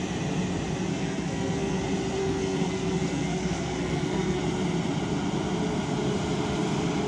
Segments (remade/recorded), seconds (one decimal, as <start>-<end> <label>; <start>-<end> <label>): 0.0-0.9 recorded; 0.9-1.8 remade; 1.8-2.2 recorded; 2.2-4.4 remade; 4.4-7.1 recorded